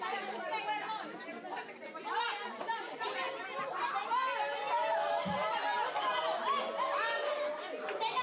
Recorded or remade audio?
recorded